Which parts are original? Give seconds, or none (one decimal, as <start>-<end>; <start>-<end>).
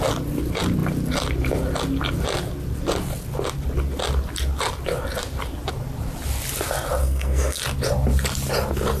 0.0-7.0; 7.6-9.0